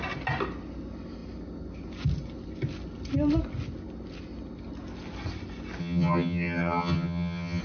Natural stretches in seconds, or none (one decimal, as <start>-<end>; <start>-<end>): 0.0-5.8